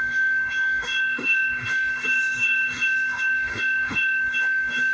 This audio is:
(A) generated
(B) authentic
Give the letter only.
A